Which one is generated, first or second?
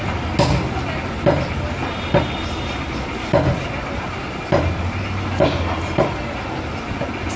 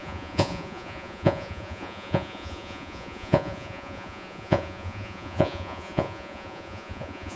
second